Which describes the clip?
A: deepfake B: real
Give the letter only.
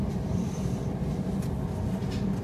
B